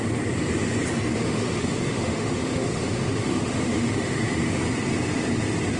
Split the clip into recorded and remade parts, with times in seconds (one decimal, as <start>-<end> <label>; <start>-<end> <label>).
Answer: 0.0-1.1 recorded; 1.1-4.6 remade; 4.6-5.8 recorded